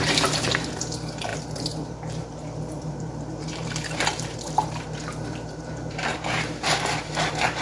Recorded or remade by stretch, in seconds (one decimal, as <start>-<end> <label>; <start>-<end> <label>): 0.0-7.6 remade